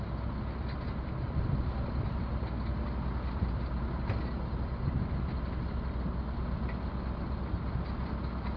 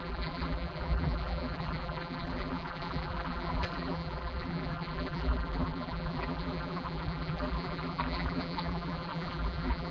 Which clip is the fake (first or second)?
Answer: second